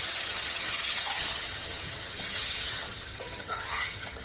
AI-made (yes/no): yes